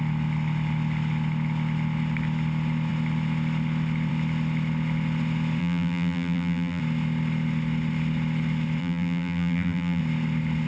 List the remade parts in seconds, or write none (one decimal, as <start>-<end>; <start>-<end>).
5.6-6.8; 8.8-10.0